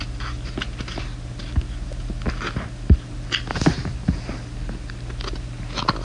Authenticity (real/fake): real